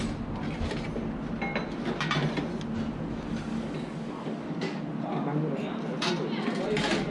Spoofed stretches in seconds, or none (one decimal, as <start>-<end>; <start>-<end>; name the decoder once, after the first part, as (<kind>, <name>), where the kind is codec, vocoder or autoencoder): 3.5-4.8 (codec, DAC)